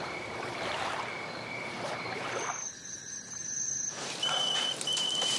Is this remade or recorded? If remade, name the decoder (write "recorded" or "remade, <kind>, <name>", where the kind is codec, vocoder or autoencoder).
remade, vocoder, BigVGAN v2